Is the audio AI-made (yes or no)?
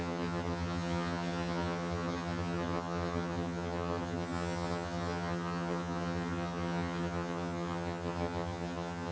yes